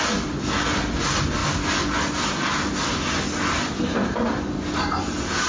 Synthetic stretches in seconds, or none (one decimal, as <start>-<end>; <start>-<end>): none